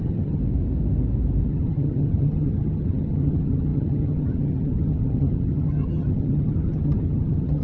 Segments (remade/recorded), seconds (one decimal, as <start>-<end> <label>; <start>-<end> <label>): 0.0-0.4 remade; 0.4-1.5 recorded; 1.5-7.6 remade